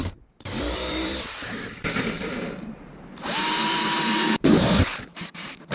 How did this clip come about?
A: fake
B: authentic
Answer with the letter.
A